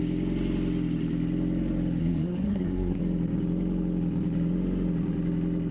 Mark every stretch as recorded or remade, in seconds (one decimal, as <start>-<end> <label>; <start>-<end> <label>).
0.0-2.0 recorded; 2.0-3.0 remade; 3.0-5.7 recorded